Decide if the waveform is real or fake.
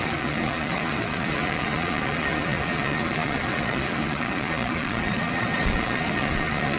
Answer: fake